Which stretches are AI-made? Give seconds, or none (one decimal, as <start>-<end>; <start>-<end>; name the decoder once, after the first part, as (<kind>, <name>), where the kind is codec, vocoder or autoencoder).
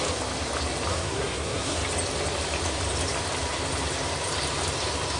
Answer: 0.9-1.8 (codec, SNAC)